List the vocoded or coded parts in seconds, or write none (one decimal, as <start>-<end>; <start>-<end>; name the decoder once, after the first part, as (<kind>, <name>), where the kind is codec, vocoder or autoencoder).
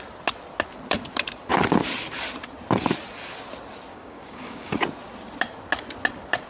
3.9-4.8 (codec, DAC)